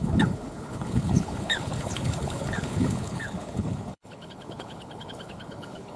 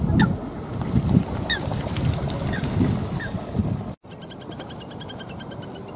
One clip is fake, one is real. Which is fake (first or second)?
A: first